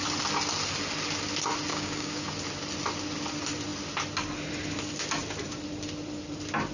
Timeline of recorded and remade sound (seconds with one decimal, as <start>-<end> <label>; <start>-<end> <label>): 0.0-1.7 recorded; 1.7-2.3 remade; 2.3-6.7 recorded

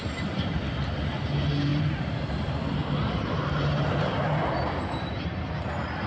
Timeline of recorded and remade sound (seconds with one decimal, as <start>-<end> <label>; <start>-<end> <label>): 0.0-1.7 recorded; 1.7-5.4 remade; 5.4-6.1 recorded

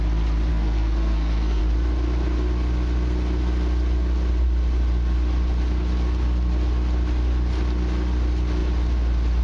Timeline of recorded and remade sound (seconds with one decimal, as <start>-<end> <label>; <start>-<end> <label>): 0.0-0.5 recorded; 0.5-1.6 remade; 1.6-9.4 recorded

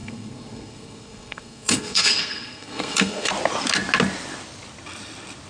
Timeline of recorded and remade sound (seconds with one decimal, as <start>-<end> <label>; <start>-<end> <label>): 0.0-3.3 remade; 3.3-5.5 recorded